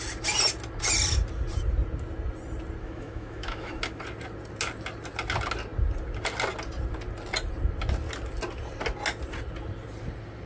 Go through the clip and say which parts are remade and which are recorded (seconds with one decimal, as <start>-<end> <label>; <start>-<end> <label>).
0.0-2.8 recorded; 2.8-3.8 remade; 3.8-10.5 recorded